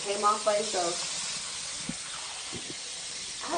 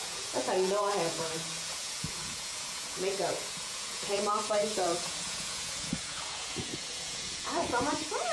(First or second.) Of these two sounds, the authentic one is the first